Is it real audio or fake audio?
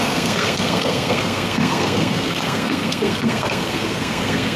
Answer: fake